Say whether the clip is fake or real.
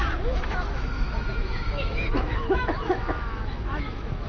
fake